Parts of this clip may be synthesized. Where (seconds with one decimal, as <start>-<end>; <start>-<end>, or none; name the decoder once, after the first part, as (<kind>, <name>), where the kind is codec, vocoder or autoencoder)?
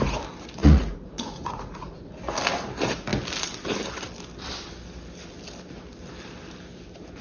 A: 0.6-2.1 (vocoder, Vocos)